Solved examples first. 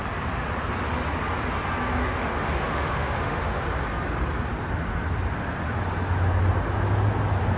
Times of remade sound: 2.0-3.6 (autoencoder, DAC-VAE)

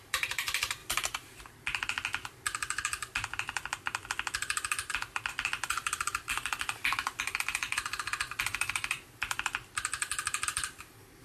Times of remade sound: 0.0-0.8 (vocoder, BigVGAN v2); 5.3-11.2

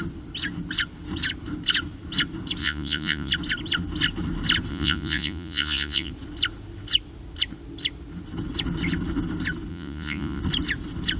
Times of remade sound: 2.6-3.3 (vocoder, Vocos); 4.7-6.1; 9.7-10.4